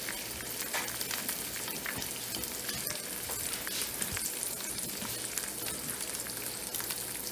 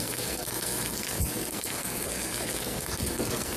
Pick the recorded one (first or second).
first